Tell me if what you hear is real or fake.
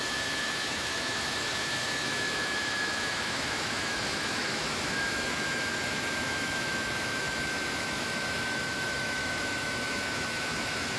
fake